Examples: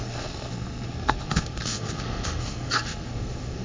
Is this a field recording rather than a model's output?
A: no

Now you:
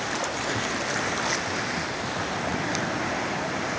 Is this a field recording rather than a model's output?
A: yes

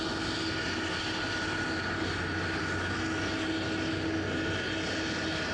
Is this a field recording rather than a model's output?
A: yes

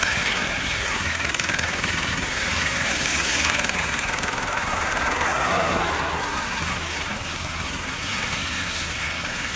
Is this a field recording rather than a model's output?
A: no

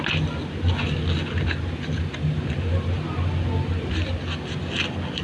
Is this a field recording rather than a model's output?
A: yes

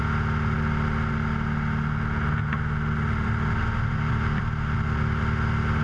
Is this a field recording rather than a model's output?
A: yes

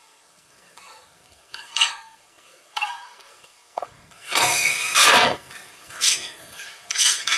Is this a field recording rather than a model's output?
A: no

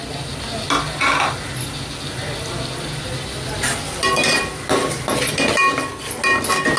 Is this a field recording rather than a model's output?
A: yes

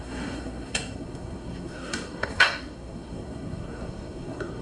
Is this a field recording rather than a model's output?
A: no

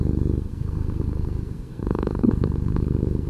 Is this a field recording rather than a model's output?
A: no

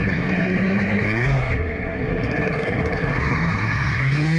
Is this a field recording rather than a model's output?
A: no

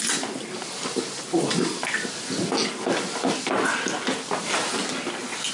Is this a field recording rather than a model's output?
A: yes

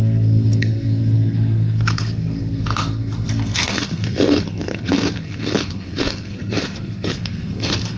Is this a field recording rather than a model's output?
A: no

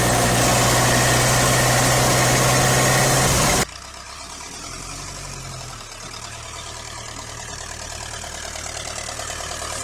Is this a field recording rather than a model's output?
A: yes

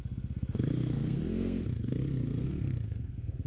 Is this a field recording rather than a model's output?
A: no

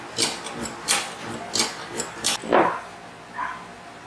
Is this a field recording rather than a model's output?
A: yes